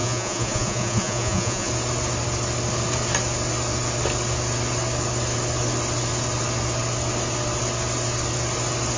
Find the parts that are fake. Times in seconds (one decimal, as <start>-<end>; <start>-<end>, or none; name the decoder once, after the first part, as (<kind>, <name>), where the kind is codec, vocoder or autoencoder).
0.0-1.7 (vocoder, Vocos)